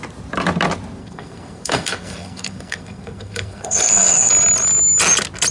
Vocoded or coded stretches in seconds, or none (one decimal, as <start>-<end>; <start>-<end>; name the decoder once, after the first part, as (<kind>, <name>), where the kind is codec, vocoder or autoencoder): 1.0-4.3 (codec, SNAC)